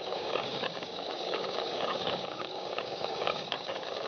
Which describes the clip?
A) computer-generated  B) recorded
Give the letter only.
A